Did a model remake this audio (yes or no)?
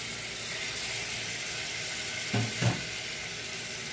no